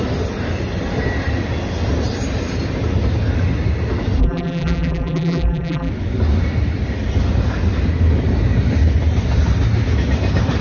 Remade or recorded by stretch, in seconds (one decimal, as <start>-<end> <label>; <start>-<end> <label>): 0.0-4.2 recorded; 4.2-5.9 remade; 5.9-10.6 recorded